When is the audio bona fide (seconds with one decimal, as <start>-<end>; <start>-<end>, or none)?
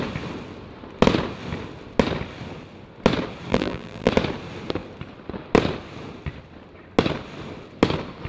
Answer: 0.0-3.5; 4.1-8.3